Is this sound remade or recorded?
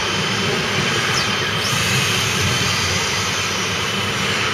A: recorded